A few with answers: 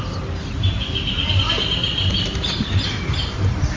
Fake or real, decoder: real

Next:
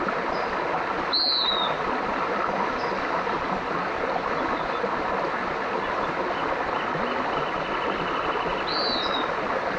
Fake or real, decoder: real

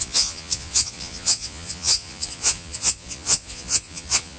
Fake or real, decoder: fake, vocoder, Vocos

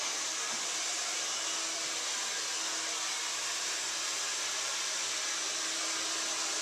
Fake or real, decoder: real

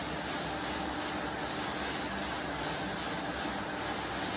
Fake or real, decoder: real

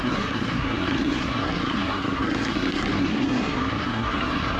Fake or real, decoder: fake, codec, SNAC